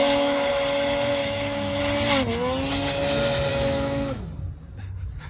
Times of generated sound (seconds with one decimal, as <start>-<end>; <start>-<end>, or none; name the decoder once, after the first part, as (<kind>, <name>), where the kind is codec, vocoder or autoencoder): 0.0-0.5 (autoencoder, DAC-VAE); 1.2-1.8; 3.5-4.2